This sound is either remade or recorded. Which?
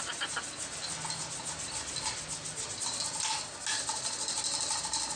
recorded